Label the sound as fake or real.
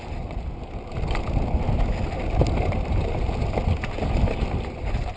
real